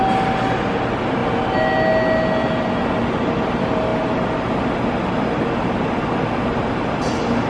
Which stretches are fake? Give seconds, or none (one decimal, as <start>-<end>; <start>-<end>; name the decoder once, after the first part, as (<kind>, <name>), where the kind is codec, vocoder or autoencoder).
none